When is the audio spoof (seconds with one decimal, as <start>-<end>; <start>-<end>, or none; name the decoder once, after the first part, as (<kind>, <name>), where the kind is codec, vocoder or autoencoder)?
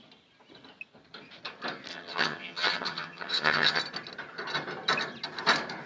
1.9-3.8 (vocoder, HiFi-GAN)